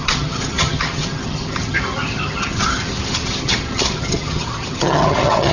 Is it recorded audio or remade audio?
remade